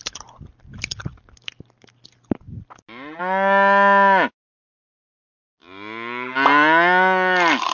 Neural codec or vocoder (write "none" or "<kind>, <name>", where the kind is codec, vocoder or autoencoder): none